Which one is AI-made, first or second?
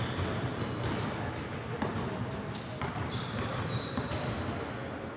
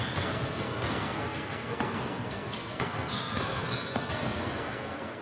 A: second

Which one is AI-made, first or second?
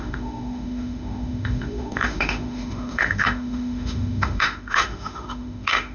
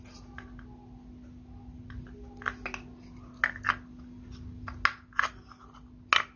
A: first